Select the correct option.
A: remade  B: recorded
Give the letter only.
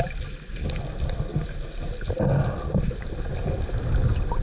B